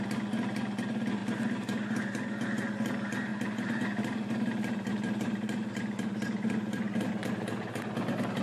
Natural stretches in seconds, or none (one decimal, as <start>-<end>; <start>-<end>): 0.0-3.3; 7.1-8.4